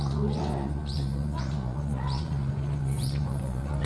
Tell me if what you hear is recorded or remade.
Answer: remade